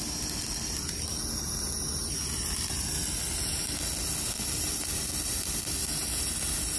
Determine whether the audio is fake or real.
real